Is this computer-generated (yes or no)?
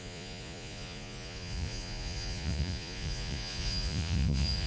yes